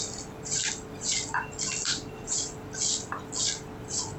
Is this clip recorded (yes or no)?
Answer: yes